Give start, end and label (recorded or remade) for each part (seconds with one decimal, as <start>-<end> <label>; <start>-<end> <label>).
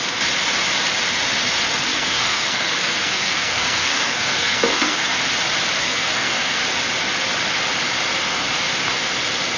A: 0.0-1.9 recorded; 1.9-5.2 remade; 5.2-5.8 recorded; 5.8-6.6 remade; 6.6-9.6 recorded